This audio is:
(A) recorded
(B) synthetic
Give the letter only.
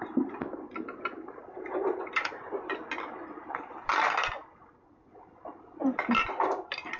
B